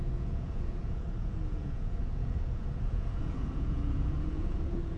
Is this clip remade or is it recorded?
remade